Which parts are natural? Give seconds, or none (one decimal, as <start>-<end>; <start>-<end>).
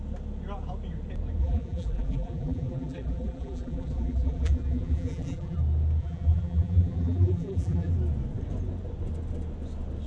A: 0.0-1.4; 5.6-6.0; 7.9-10.1